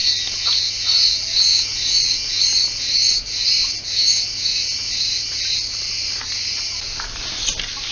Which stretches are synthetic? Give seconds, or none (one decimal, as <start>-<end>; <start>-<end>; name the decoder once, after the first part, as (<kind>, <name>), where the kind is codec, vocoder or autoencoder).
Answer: none